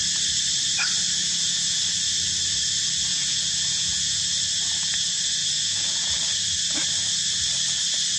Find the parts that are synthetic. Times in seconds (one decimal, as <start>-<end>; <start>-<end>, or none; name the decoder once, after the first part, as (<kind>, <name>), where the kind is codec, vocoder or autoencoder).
1.2-1.8 (vocoder, Vocos); 3.1-4.2; 5.4-6.1